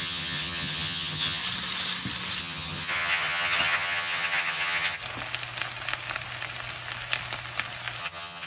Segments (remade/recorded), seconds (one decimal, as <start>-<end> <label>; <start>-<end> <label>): 0.0-1.4 remade; 1.4-2.4 recorded; 2.4-5.0 remade; 5.0-8.0 recorded; 8.0-8.5 remade